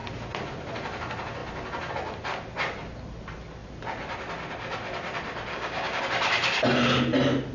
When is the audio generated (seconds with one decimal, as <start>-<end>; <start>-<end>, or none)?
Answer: 5.5-6.0